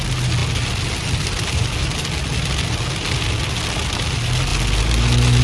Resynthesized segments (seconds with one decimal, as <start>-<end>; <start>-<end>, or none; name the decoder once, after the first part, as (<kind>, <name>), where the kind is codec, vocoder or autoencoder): none